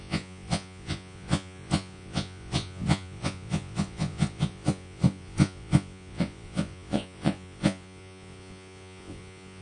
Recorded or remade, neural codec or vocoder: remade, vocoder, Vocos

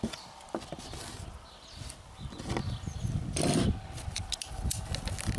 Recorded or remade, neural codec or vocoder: recorded